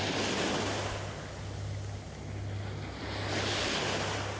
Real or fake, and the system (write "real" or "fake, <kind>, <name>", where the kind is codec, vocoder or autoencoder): real